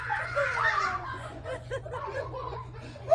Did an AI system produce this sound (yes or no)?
yes